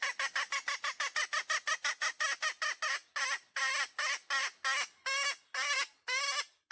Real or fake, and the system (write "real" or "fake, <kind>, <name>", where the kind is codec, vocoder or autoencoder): real